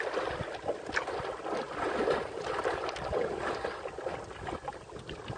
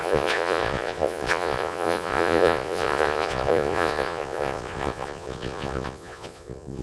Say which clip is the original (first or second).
first